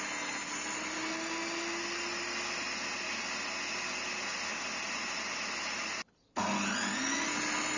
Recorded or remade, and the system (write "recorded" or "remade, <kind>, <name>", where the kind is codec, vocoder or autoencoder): recorded